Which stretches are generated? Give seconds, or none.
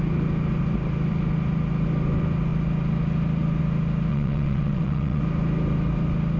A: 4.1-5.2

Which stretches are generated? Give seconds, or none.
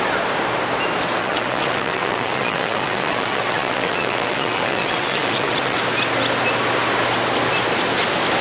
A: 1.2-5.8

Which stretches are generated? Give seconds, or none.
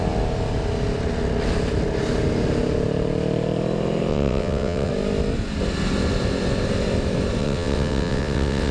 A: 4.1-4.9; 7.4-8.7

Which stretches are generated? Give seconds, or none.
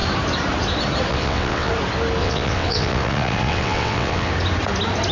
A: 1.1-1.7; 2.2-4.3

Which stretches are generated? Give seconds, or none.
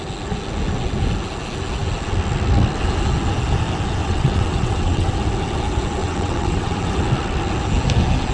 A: 4.0-5.1; 6.0-6.9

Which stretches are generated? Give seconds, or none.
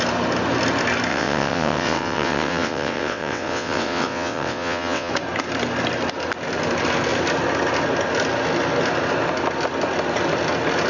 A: 1.1-5.1